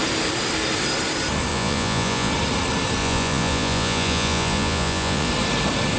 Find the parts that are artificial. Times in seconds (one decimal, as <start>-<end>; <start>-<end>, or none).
1.5-2.3; 3.0-5.3